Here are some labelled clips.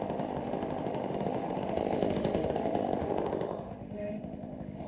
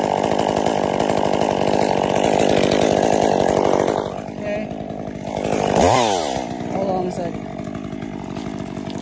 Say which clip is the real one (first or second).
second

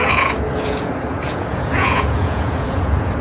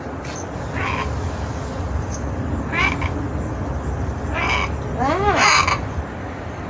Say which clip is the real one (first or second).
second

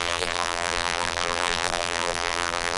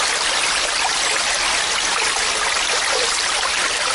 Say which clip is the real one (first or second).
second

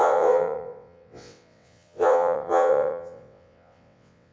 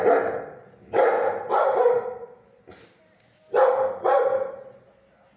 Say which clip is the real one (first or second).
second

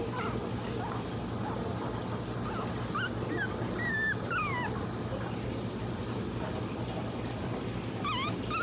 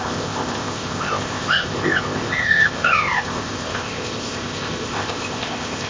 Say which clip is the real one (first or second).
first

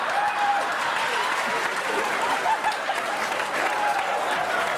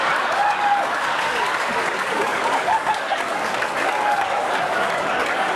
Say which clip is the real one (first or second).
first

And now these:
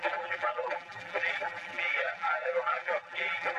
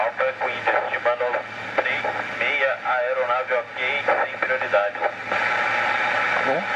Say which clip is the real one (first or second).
second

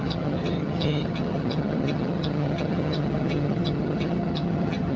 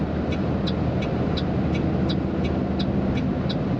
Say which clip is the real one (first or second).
second